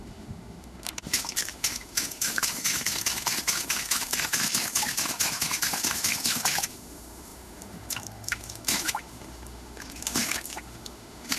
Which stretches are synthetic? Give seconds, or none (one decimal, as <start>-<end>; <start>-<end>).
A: 0.0-11.4